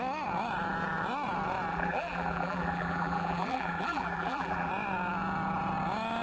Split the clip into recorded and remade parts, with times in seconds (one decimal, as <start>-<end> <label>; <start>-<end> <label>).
0.0-1.7 recorded; 1.7-4.7 remade; 4.7-6.2 recorded